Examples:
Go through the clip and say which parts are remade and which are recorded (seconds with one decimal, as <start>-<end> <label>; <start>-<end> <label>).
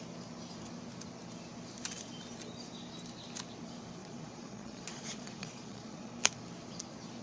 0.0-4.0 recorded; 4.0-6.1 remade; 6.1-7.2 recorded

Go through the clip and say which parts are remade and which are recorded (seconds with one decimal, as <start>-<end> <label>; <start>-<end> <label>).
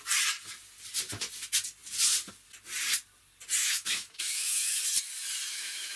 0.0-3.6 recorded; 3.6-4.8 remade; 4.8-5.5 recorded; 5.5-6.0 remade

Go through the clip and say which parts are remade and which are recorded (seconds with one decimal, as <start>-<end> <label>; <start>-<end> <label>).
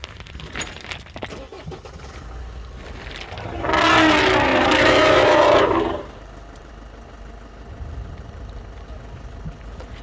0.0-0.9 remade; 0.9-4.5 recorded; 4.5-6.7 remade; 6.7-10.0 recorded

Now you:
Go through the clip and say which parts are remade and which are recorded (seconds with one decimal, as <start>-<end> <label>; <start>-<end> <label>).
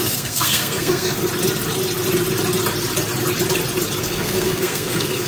0.0-1.2 remade; 1.2-4.0 recorded; 4.0-5.3 remade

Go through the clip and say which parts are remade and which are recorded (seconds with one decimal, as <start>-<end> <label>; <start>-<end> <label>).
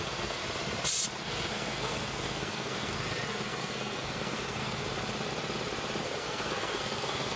0.0-0.4 remade; 0.4-1.2 recorded; 1.2-4.8 remade; 4.8-6.0 recorded; 6.0-7.4 remade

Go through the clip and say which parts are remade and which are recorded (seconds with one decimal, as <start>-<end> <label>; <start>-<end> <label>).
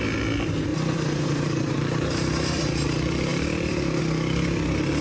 0.0-0.7 recorded; 0.7-2.6 remade; 2.6-3.3 recorded; 3.3-4.0 remade; 4.0-5.0 recorded